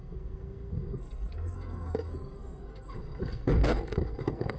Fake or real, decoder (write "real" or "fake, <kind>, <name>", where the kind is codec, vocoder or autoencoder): fake, codec, SNAC